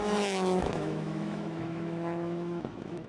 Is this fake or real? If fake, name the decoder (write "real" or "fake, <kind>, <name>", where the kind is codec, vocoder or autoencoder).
fake, autoencoder, DAC-VAE